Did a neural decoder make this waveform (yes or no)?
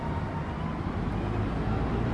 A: no